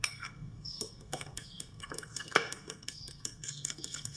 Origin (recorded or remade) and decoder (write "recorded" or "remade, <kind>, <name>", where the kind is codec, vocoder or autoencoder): remade, codec, SNAC